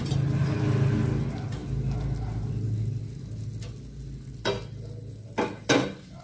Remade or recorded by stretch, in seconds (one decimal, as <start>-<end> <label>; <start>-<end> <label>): 0.0-6.2 recorded